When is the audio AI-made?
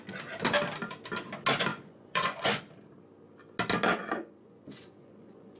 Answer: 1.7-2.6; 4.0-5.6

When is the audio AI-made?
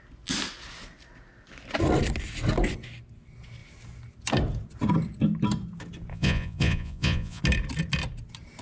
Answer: 6.1-7.4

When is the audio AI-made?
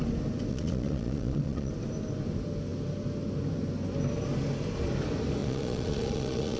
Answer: 0.5-1.7; 5.4-6.6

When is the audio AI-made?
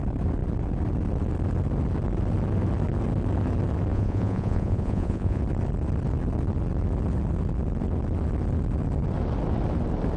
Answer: 3.9-5.4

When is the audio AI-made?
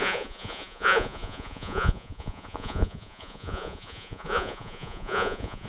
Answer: 0.0-5.7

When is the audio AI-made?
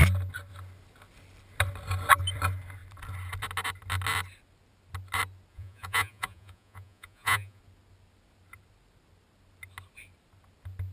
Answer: 5.5-7.6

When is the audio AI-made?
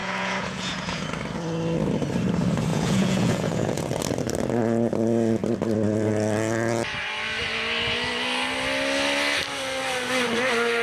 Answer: 0.0-1.0; 2.7-4.0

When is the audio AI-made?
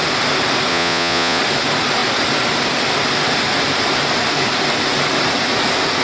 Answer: 0.7-1.4